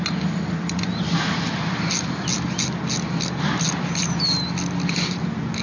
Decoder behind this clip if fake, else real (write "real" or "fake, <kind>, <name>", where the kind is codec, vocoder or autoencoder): real